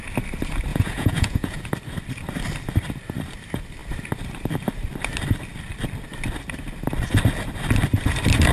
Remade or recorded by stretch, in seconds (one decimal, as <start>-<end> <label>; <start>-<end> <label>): 0.0-0.7 recorded; 0.7-1.7 remade; 1.7-8.5 recorded